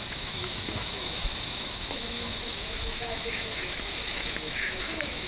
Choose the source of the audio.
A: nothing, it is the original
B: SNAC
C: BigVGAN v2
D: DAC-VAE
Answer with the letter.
D